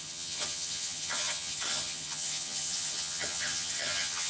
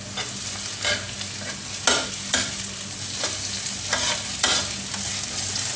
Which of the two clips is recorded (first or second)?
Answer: second